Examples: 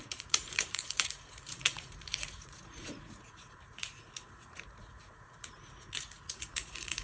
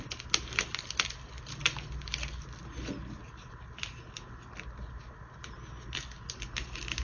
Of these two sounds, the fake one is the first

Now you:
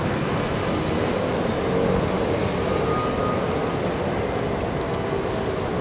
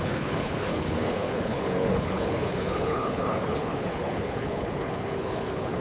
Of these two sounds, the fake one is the second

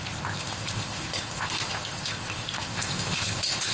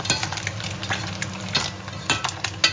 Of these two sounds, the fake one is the first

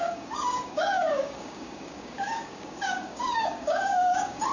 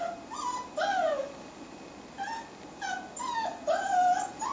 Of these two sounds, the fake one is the first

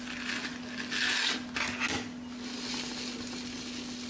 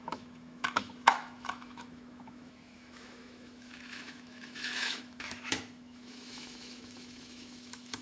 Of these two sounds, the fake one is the second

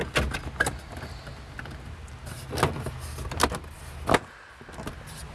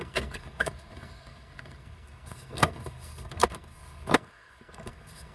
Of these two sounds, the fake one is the second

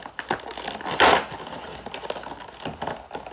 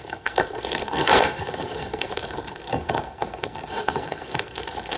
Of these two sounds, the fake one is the second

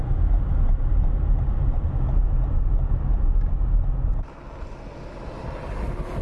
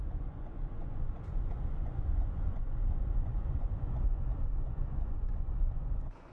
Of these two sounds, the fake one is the second